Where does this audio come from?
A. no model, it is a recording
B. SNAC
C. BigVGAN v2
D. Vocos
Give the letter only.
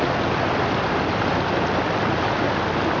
A